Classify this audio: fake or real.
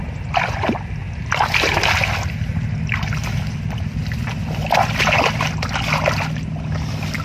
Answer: real